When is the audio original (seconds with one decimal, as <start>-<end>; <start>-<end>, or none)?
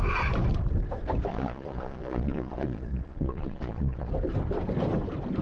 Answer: 0.0-1.3; 4.1-5.4